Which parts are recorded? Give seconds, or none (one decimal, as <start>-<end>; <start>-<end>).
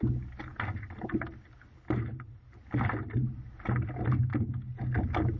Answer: 0.0-5.4